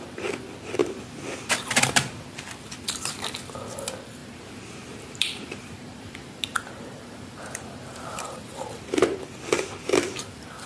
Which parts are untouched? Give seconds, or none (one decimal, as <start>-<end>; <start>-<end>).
0.0-4.2; 9.2-10.7